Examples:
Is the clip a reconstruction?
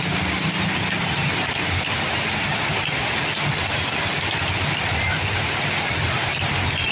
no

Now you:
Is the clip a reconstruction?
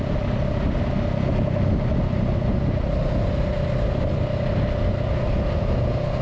no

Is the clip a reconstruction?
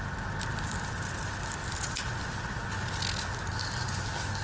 no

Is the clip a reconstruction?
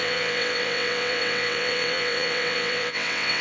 yes